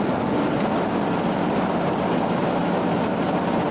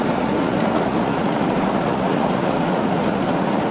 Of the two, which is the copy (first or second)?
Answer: second